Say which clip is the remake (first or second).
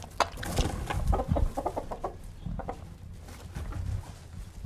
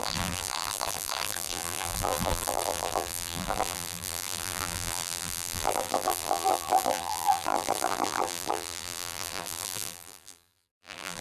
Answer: second